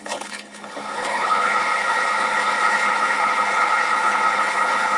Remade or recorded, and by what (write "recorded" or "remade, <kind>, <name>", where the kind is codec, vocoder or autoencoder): remade, codec, HILCodec